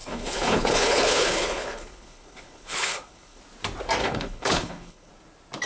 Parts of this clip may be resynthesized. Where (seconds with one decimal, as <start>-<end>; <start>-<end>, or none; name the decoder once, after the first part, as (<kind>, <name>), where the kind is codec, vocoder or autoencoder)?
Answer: 0.0-3.4 (codec, HILCodec); 4.0-5.1